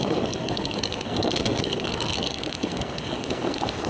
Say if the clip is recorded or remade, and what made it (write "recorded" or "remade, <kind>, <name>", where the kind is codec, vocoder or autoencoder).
remade, codec, SNAC